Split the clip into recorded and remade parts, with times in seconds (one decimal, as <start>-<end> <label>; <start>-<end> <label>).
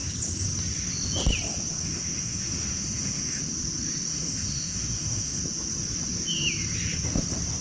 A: 0.0-1.8 recorded; 1.8-3.4 remade; 3.4-4.1 recorded; 4.1-5.4 remade; 5.4-7.6 recorded